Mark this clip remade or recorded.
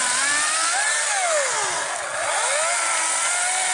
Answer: recorded